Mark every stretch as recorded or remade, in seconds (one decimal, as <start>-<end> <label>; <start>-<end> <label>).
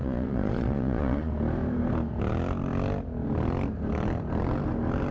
0.0-1.3 remade; 1.3-5.1 recorded